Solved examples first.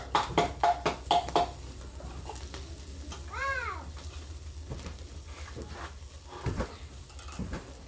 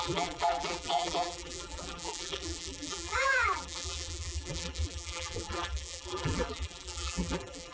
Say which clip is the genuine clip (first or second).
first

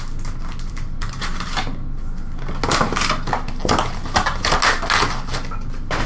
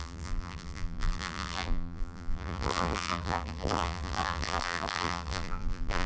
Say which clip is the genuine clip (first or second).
first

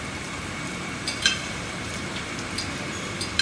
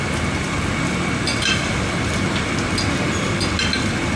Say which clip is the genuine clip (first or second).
second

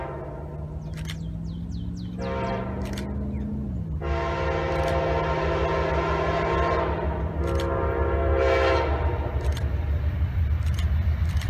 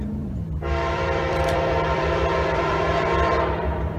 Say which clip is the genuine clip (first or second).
first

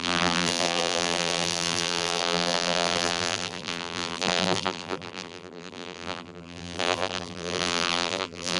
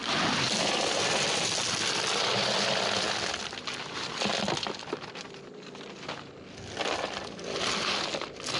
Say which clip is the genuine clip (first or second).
second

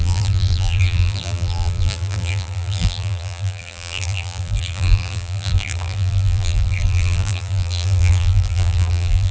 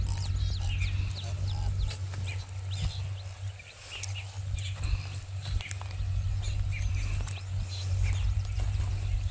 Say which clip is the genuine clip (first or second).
second